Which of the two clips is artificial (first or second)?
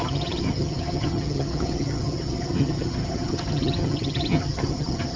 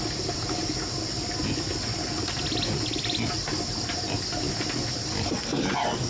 first